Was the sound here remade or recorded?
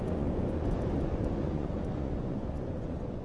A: remade